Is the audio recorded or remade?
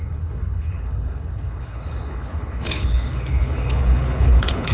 remade